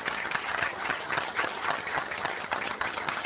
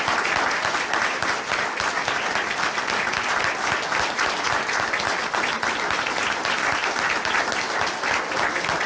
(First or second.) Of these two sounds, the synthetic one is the first